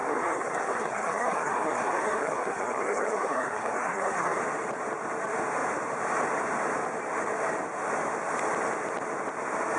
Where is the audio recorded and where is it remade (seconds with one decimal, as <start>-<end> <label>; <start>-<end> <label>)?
0.0-4.4 remade; 4.4-9.8 recorded